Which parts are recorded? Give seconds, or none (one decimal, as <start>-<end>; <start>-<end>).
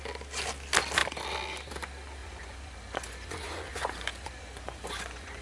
0.0-2.2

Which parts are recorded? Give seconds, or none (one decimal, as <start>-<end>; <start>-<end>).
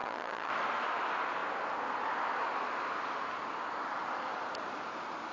0.5-5.3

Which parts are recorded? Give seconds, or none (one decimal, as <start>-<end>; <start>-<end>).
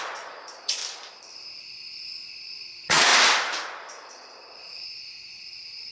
0.8-2.0; 3.1-4.1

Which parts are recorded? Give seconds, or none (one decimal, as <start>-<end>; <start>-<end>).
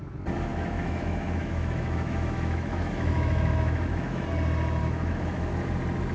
0.0-0.5; 4.2-4.8; 5.5-6.1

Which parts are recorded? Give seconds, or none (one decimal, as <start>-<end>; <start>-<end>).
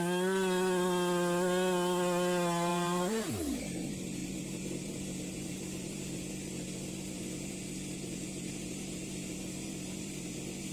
0.0-2.7; 3.3-10.7